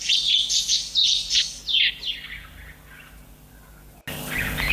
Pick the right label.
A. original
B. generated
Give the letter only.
A